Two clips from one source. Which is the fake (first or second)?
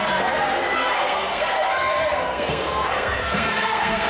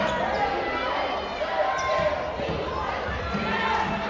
first